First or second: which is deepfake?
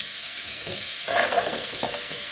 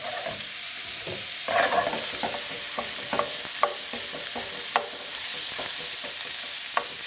first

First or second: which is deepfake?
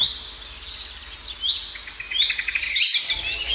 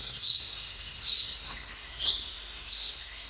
second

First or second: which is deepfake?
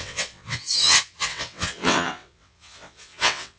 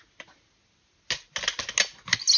first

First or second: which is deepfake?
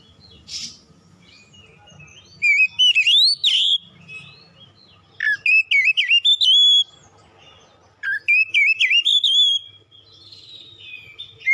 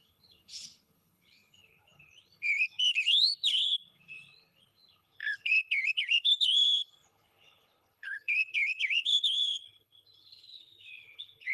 second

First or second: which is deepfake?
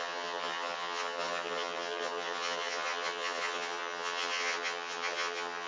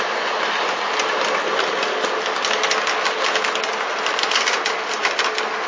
first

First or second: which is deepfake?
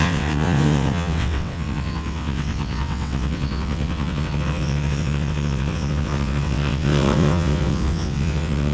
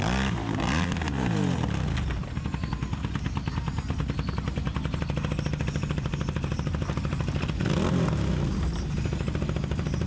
first